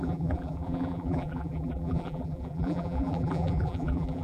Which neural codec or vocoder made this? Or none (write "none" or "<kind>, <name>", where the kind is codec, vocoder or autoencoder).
vocoder, BigVGAN v2